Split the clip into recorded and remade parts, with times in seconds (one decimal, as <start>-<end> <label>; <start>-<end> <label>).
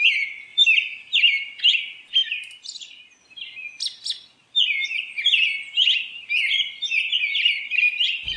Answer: 0.0-0.5 recorded; 0.5-1.6 remade; 1.6-2.2 recorded; 2.2-3.2 remade; 3.2-4.4 recorded; 4.4-7.0 remade; 7.0-8.4 recorded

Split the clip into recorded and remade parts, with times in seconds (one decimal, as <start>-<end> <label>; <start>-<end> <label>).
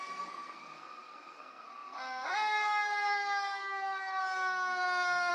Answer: 0.0-5.3 remade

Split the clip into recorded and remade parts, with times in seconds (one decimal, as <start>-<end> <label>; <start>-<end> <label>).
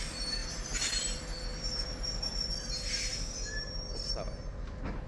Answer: 0.0-0.4 recorded; 0.4-2.5 remade; 2.5-3.1 recorded; 3.1-4.5 remade; 4.5-5.1 recorded